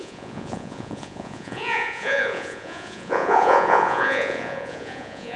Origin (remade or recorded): remade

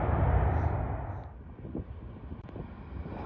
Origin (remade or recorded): recorded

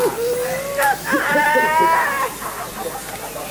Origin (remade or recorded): recorded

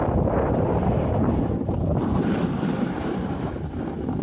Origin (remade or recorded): remade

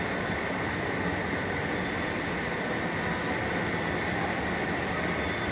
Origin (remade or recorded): recorded